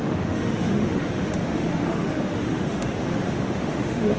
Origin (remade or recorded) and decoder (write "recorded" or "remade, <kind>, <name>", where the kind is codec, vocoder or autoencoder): remade, autoencoder, DAC-VAE